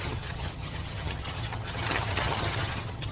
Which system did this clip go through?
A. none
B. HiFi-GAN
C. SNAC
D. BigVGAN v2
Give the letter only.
B